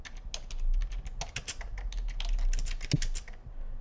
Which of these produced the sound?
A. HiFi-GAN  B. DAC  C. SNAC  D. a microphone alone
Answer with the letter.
D